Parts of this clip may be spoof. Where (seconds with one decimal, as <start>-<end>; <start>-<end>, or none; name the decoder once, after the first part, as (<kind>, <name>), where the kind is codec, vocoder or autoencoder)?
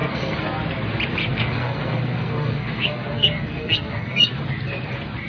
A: 0.0-0.6 (codec, SNAC); 1.2-4.4